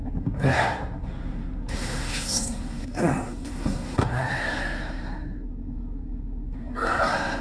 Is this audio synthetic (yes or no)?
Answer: yes